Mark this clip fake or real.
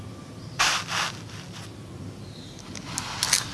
real